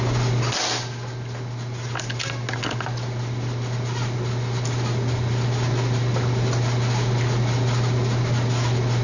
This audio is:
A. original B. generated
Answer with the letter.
A